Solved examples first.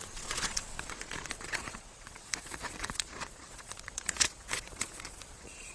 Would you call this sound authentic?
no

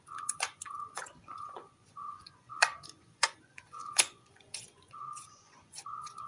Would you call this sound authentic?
no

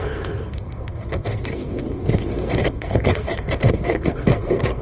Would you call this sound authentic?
no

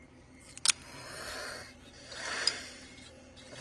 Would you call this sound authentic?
yes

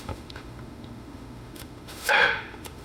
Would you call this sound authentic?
no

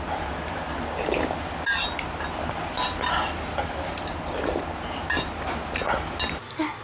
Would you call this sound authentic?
yes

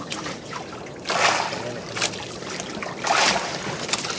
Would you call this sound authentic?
no